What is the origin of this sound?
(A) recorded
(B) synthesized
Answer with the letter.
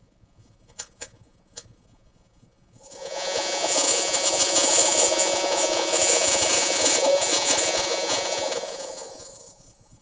B